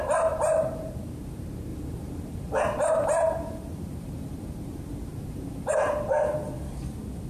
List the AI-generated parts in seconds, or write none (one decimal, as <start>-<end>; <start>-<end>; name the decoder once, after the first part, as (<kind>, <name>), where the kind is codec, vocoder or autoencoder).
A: 0.0-6.4 (vocoder, BigVGAN v2)